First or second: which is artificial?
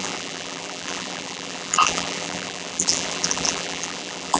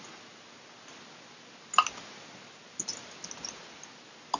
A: first